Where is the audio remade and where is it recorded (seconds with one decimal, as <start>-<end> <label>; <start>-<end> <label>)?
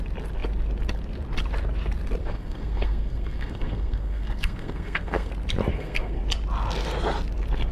0.0-2.2 recorded; 2.2-5.3 remade; 5.3-5.7 recorded; 5.7-6.2 remade; 6.2-7.7 recorded